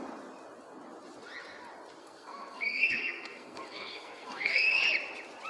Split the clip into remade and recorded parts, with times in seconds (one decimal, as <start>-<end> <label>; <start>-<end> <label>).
0.0-2.0 recorded; 2.0-4.8 remade; 4.8-5.5 recorded